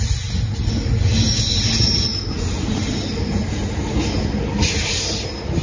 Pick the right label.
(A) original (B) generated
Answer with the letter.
A